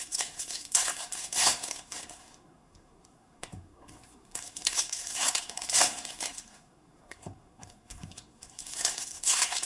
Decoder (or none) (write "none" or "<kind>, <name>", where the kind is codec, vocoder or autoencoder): codec, SNAC